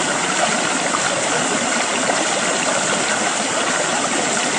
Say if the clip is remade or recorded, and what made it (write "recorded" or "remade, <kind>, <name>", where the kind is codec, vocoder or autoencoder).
recorded